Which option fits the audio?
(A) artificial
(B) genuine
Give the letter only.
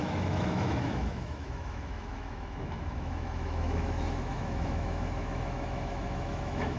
A